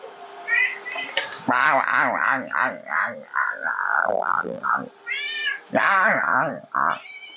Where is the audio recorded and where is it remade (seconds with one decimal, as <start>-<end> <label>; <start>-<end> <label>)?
0.0-4.0 recorded; 4.0-4.6 remade; 4.6-7.4 recorded